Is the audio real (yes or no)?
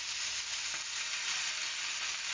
yes